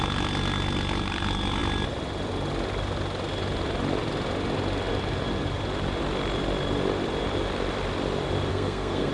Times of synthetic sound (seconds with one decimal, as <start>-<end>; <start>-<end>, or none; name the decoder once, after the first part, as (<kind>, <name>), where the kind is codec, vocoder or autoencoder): 8.5-9.1 (codec, SNAC)